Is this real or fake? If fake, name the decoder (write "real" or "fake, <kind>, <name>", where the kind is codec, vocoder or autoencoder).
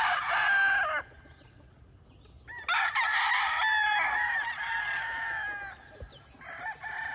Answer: real